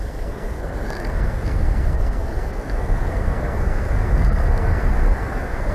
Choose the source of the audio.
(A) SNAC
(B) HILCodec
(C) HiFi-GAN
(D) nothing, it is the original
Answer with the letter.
A